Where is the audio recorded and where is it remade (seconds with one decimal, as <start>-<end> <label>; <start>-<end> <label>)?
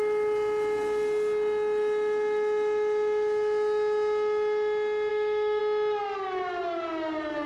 0.0-5.1 recorded; 5.1-5.6 remade; 5.6-7.5 recorded